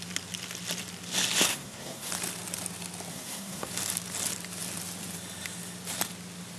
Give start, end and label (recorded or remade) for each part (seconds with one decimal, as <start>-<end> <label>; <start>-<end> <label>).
0.0-1.5 recorded; 1.5-2.1 remade; 2.1-3.1 recorded; 3.1-3.7 remade; 3.7-6.6 recorded